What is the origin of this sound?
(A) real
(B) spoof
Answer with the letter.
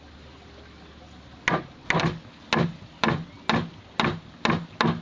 A